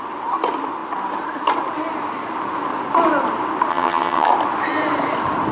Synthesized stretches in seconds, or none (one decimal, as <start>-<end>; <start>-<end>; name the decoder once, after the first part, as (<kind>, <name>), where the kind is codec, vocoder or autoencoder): 3.7-4.3 (vocoder, HiFi-GAN)